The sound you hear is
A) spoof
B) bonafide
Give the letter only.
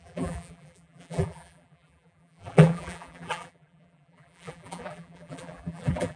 A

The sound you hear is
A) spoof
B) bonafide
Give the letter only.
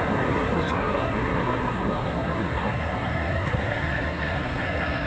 A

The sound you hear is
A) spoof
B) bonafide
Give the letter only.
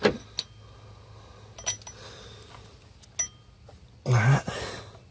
B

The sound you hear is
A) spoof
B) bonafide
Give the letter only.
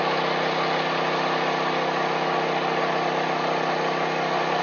B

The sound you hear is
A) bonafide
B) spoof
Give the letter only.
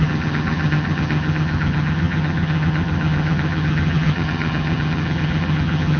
B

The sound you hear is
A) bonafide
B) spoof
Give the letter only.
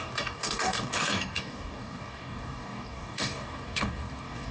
B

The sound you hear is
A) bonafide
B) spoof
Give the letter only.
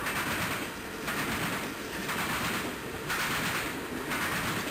A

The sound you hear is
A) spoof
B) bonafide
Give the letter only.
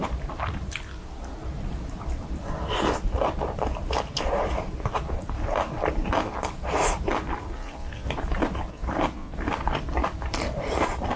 B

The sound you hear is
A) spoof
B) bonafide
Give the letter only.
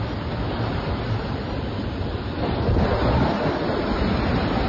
B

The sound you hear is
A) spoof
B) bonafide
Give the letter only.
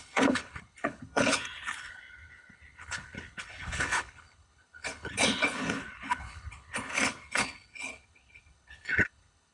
A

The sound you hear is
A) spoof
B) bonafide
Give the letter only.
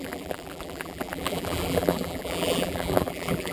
A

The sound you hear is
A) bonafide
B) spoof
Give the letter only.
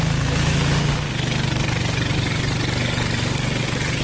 A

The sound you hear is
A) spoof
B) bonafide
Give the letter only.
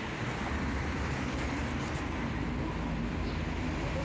B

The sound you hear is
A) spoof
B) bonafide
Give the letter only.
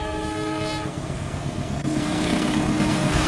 A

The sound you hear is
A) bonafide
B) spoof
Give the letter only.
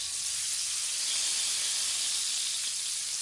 A